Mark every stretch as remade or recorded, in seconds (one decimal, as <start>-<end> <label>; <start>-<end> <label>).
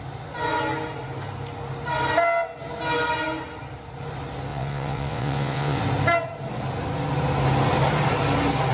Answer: 0.0-4.5 recorded; 4.5-5.8 remade; 5.8-8.7 recorded